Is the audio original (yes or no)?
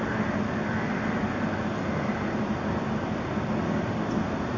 yes